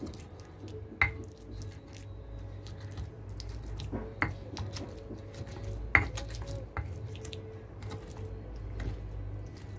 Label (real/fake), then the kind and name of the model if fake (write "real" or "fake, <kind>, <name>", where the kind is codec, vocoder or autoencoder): real